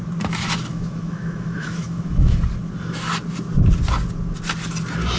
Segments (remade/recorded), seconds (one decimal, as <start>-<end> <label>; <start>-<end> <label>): 0.0-0.7 recorded; 0.7-2.4 remade; 2.4-5.2 recorded